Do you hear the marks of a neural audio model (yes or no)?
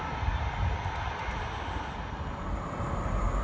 no